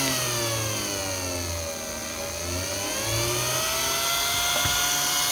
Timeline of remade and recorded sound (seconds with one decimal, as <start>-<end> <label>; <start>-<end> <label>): 0.0-5.3 recorded